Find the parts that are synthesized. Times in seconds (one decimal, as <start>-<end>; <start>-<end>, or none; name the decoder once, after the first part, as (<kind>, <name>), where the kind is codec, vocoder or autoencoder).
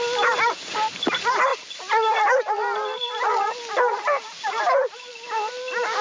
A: none